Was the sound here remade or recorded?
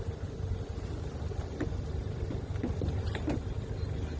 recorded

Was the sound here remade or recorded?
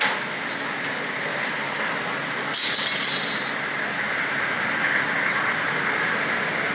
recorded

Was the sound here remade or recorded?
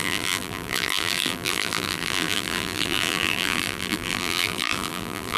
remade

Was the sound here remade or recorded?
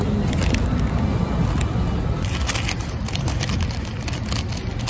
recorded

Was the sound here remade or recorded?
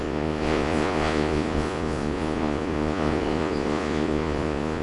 remade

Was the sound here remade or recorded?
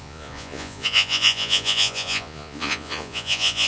remade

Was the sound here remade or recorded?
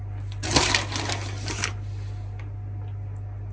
recorded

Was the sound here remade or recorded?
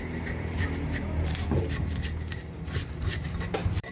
remade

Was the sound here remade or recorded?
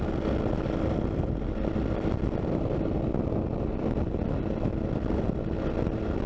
recorded